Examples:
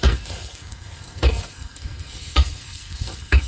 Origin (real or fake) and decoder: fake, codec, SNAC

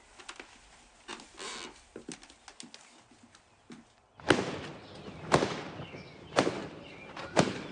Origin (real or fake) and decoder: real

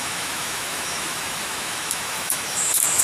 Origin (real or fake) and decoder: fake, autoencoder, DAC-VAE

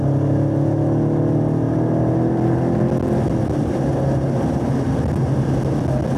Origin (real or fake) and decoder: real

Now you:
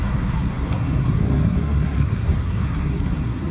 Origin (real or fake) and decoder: fake, codec, SNAC